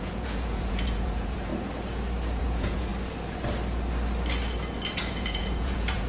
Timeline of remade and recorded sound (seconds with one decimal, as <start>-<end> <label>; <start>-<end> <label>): 0.0-1.5 remade; 1.5-2.4 recorded; 2.4-2.9 remade; 2.9-5.0 recorded; 5.0-6.1 remade